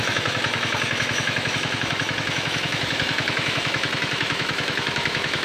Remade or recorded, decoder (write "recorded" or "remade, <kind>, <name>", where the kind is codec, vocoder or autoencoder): remade, autoencoder, DAC-VAE